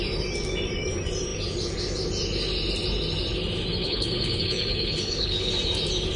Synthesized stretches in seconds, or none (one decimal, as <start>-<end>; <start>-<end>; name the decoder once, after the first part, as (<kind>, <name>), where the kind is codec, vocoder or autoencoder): 3.8-5.5 (codec, HILCodec)

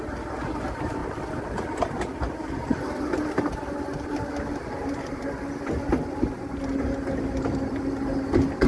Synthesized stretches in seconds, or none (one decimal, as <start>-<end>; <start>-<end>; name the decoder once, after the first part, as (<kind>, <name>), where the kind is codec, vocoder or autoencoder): none